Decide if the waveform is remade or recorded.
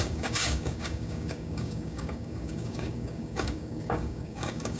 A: remade